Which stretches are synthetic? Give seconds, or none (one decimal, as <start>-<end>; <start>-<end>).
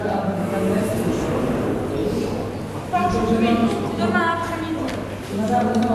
none